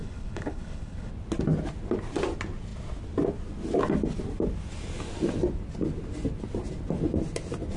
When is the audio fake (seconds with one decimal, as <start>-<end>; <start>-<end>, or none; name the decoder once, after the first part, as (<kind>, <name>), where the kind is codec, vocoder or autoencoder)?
0.0-1.1 (codec, HILCodec)

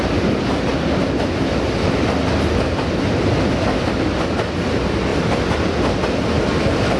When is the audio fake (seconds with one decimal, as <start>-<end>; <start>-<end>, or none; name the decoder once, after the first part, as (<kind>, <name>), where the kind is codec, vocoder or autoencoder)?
none

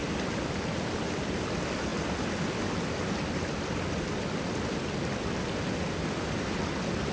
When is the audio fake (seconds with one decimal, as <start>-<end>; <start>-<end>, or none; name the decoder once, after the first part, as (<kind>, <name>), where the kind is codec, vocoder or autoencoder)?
none

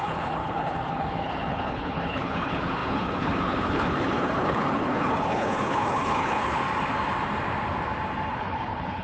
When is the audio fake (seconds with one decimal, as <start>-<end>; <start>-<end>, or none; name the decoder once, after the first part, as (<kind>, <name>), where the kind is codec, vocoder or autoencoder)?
0.0-6.6 (codec, HILCodec); 8.3-9.0

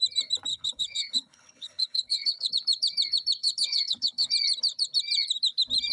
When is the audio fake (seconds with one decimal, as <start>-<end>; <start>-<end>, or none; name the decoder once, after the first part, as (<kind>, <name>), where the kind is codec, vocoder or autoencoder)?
0.5-2.5 (codec, HILCodec); 3.4-4.3